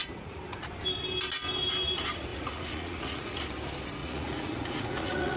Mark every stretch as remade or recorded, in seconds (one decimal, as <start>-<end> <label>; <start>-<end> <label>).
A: 0.0-0.7 remade; 0.7-2.3 recorded; 2.3-3.4 remade; 3.4-4.0 recorded; 4.0-5.4 remade